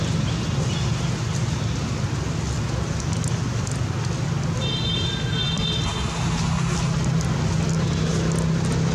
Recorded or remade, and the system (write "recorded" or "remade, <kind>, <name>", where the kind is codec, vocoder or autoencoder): recorded